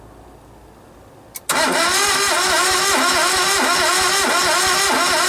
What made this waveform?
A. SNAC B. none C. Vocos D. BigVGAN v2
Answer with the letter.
B